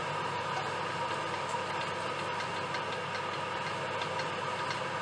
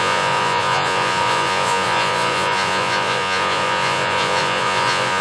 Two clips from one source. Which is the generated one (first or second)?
second